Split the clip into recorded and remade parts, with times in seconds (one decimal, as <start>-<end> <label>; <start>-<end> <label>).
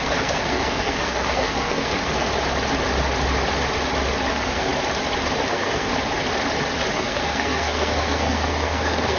0.0-2.3 remade; 2.3-4.3 recorded; 4.3-4.7 remade; 4.7-5.5 recorded; 5.5-5.9 remade; 5.9-6.9 recorded; 6.9-9.2 remade